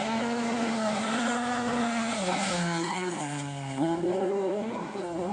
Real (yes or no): no